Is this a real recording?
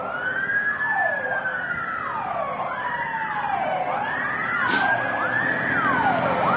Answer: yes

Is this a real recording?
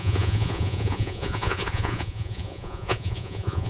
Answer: no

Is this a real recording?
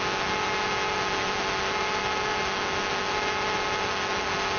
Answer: yes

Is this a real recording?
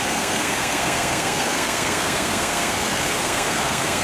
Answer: no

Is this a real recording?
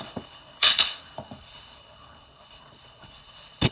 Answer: no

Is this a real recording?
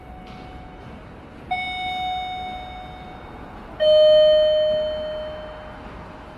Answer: yes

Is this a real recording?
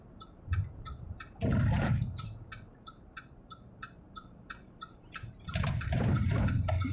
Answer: no